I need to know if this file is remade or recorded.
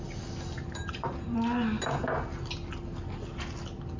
recorded